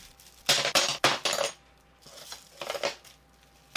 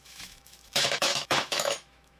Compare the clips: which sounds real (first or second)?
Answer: first